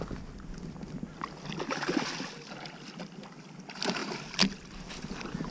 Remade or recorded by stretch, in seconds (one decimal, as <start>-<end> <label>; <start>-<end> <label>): 0.0-5.5 recorded